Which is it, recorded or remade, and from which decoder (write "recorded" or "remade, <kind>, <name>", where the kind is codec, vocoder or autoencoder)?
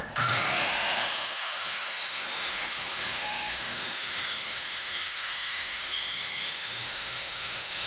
remade, autoencoder, DAC-VAE